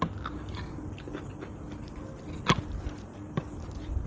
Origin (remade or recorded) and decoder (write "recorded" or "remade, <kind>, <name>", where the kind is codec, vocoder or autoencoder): recorded